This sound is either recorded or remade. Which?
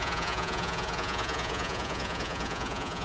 remade